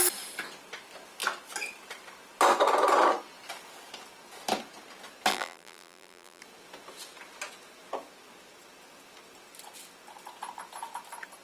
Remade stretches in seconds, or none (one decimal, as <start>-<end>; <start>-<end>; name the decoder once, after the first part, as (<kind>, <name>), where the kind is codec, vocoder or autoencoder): 5.3-6.4 (vocoder, BigVGAN v2)